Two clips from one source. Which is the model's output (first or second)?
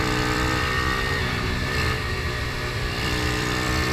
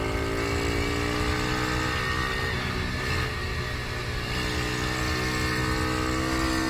first